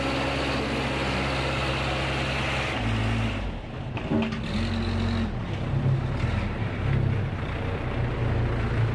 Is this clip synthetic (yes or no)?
no